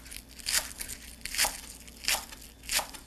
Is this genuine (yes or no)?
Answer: yes